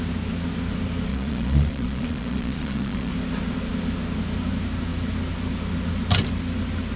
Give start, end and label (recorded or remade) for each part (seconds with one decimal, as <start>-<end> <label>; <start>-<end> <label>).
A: 0.0-1.1 recorded; 1.1-3.1 remade; 3.1-7.0 recorded